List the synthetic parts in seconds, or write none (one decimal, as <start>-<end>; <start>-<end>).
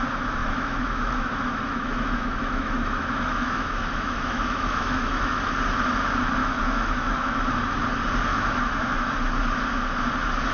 0.4-5.5; 6.4-7.4; 8.3-9.2